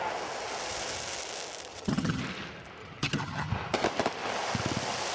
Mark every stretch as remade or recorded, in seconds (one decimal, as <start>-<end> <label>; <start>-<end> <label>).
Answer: 0.0-1.7 recorded; 1.7-2.2 remade; 2.2-2.8 recorded; 2.8-3.5 remade; 3.5-5.1 recorded